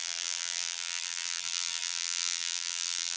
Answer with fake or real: fake